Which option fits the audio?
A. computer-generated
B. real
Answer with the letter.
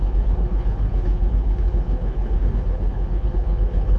A